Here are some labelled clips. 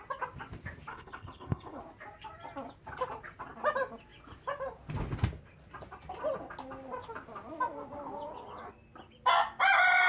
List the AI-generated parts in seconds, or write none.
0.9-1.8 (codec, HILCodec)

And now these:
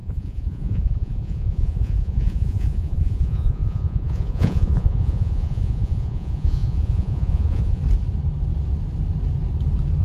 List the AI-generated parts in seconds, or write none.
0.0-7.8 (vocoder, Vocos)

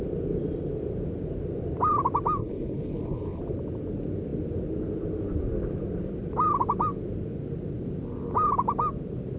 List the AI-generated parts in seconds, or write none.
2.4-3.4 (codec, HILCodec)